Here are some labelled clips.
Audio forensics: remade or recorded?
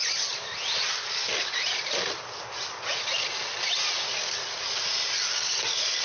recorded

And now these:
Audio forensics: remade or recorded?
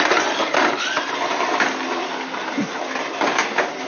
recorded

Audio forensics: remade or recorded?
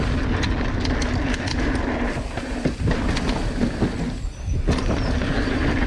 recorded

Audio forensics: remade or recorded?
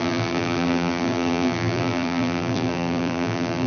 remade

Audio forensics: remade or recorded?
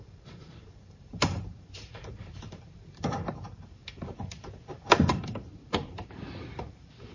remade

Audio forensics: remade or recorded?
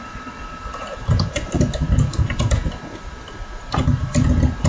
remade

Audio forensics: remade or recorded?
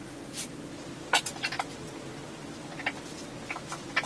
recorded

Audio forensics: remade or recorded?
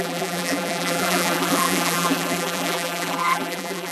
remade